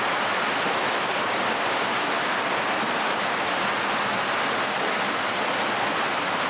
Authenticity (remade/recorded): recorded